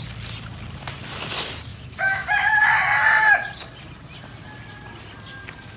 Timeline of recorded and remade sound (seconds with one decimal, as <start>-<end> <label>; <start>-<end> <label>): 0.0-1.7 recorded; 1.7-2.7 remade; 2.7-5.8 recorded